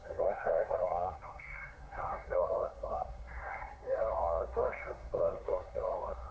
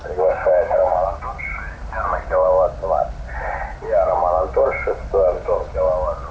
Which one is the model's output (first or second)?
first